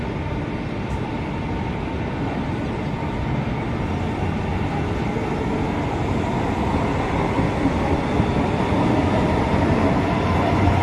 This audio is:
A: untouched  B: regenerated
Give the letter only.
A